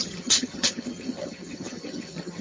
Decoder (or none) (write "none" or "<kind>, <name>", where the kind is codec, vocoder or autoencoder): vocoder, HiFi-GAN